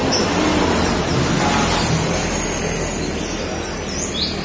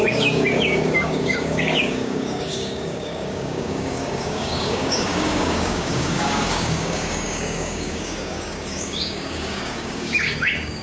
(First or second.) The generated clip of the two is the second